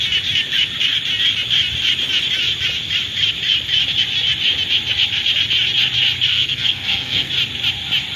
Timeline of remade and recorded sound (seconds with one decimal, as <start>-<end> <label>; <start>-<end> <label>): 0.0-6.3 recorded; 6.3-7.3 remade; 7.3-8.2 recorded